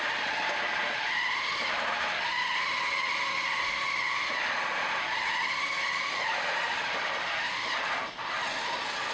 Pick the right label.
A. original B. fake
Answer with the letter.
A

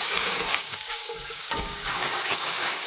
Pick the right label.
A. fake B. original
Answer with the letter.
A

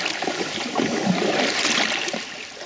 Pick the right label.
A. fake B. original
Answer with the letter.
B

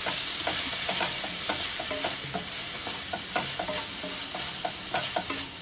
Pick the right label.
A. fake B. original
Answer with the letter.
B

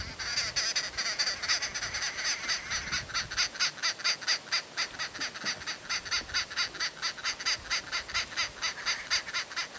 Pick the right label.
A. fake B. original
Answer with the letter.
B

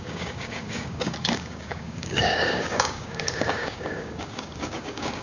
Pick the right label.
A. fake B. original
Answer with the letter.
A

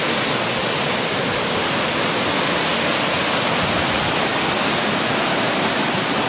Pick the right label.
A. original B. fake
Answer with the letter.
A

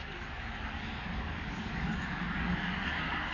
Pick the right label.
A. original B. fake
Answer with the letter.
B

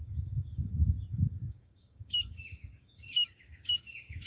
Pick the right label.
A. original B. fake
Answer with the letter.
B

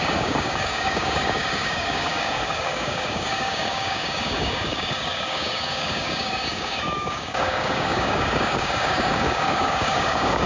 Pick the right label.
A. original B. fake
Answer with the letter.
B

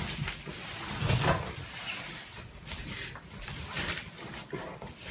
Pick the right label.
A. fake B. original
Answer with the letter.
B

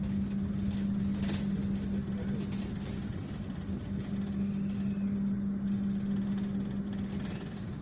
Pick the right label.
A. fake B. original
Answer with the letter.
B